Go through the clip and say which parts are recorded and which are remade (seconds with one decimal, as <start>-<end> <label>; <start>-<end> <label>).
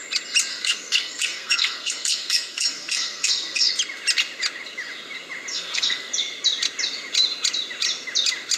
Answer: 0.0-0.5 recorded; 0.5-3.7 remade; 3.7-5.5 recorded; 5.5-6.1 remade; 6.1-8.6 recorded